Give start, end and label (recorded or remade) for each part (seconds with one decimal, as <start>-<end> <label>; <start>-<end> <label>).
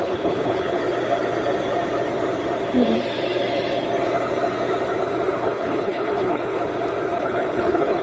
0.0-0.8 remade; 0.8-5.4 recorded; 5.4-6.6 remade; 6.6-7.2 recorded; 7.2-8.0 remade